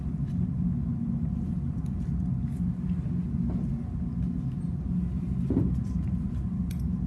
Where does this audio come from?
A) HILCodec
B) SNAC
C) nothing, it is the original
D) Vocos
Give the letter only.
C